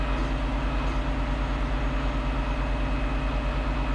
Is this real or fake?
real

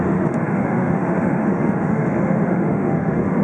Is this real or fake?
fake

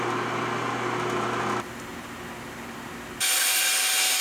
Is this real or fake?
real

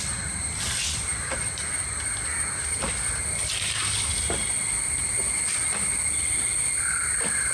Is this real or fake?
real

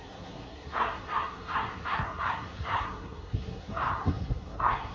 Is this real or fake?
fake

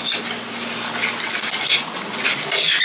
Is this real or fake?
real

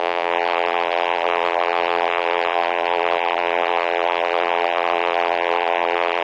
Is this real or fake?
fake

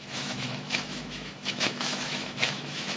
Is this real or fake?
fake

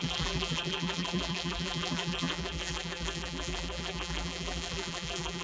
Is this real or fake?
fake